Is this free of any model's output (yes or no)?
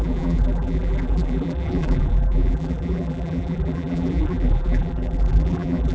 no